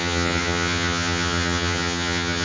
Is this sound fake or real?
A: fake